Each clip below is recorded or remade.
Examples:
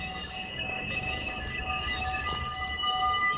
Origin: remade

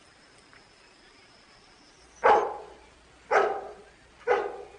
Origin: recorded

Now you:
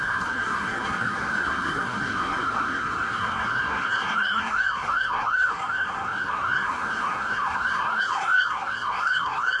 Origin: remade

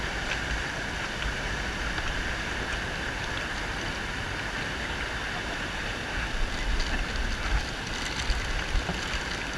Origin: recorded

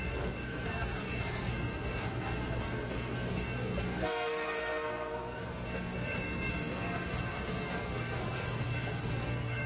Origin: remade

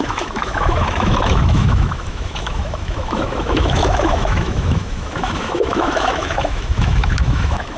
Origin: remade